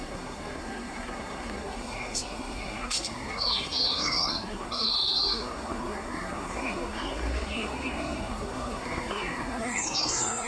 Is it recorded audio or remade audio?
remade